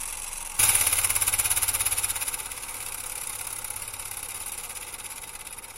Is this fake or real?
real